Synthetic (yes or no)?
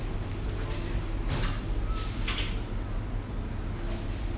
no